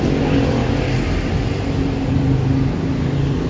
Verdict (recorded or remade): recorded